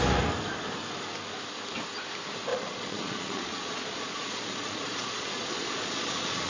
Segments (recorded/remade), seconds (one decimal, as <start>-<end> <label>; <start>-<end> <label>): 0.0-2.5 recorded; 2.5-6.5 remade